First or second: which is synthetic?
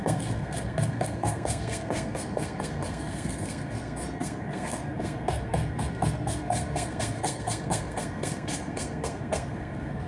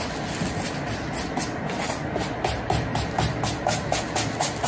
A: first